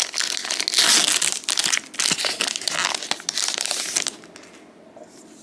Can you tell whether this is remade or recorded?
recorded